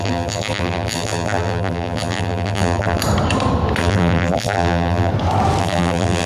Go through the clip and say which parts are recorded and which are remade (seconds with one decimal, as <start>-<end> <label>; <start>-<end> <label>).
0.0-3.0 remade; 3.0-3.8 recorded; 3.8-5.1 remade; 5.1-5.6 recorded; 5.6-6.3 remade